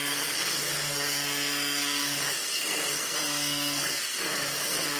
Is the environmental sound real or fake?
fake